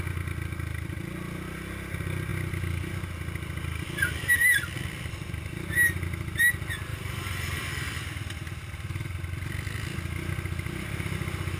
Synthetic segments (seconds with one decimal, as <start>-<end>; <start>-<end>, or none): 6.9-7.6